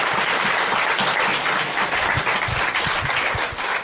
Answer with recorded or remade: remade